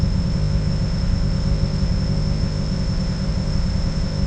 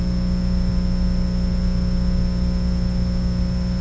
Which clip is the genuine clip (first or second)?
second